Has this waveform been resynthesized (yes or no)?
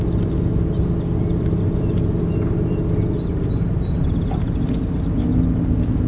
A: no